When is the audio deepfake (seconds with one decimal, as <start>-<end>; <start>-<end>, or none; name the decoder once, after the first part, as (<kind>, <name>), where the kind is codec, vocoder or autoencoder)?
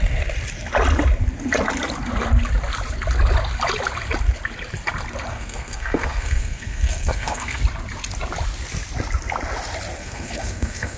5.3-7.6 (codec, SNAC); 10.0-11.0